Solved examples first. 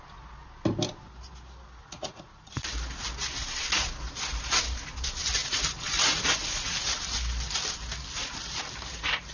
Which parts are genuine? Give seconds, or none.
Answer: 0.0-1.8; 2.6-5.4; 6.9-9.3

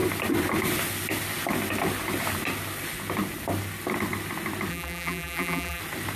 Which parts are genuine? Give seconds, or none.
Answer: 0.0-4.7; 5.8-6.2

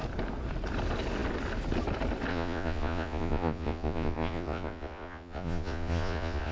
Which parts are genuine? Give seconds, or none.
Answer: 0.0-2.3

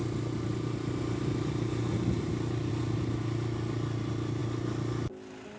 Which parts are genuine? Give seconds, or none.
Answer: 0.0-5.6

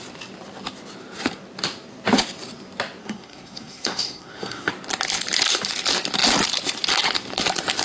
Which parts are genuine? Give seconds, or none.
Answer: 0.0-3.0; 4.7-7.8

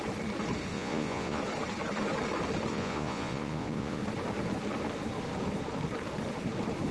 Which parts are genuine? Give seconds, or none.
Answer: 0.0-0.7; 1.4-2.7; 4.0-6.9

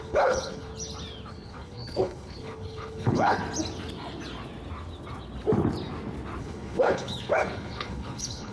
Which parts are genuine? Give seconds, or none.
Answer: 0.7-1.3; 3.4-6.4

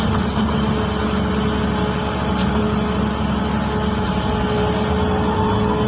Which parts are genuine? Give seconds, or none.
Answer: 0.0-5.9